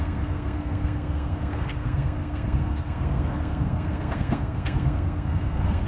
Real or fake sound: fake